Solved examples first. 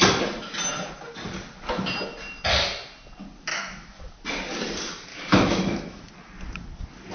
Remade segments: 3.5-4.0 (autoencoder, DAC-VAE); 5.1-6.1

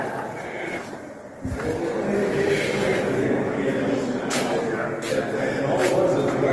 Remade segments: 2.2-4.2 (autoencoder, DAC-VAE)

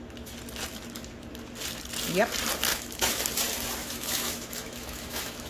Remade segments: 2.7-3.2 (autoencoder, DAC-VAE); 3.8-5.5

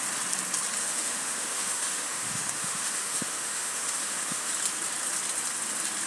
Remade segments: 0.8-4.5 (autoencoder, DAC-VAE)